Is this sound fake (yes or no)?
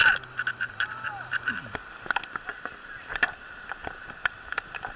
no